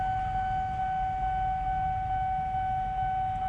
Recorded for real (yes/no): yes